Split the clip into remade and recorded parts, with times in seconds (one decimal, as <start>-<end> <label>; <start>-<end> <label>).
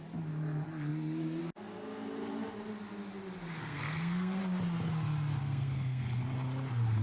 0.0-3.6 recorded; 3.6-4.4 remade; 4.4-5.4 recorded; 5.4-6.0 remade; 6.0-7.0 recorded